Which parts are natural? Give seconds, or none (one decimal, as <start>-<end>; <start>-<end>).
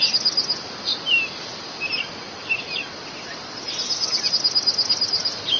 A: 0.0-5.6